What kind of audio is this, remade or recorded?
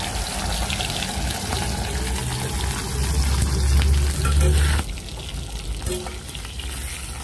recorded